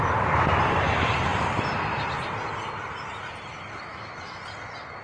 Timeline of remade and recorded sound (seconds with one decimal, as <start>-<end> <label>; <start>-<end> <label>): 0.0-3.9 recorded; 3.9-4.4 remade; 4.4-5.0 recorded